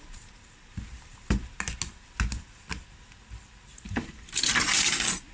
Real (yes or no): yes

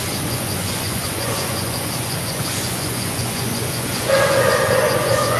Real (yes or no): no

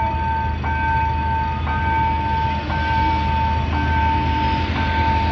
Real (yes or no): yes